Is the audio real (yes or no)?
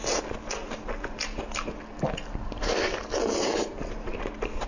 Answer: yes